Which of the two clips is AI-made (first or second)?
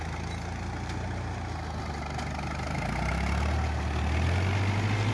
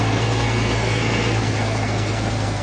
second